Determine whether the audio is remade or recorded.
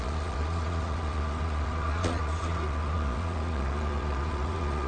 remade